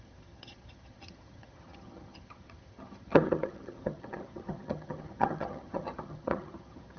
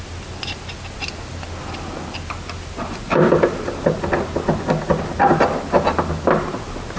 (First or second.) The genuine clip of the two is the second